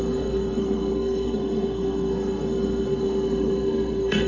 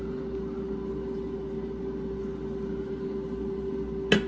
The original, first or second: second